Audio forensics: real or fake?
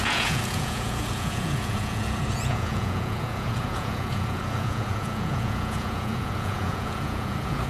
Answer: fake